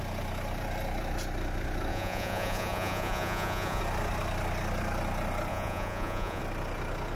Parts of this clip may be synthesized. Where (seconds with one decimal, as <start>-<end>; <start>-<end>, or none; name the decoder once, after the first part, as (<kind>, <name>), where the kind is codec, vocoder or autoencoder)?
1.9-3.8 (vocoder, Vocos); 5.5-6.4